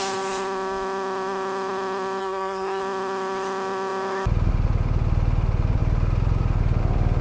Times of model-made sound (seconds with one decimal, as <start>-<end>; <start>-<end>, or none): 2.2-2.8